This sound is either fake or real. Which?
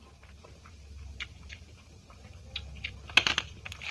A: real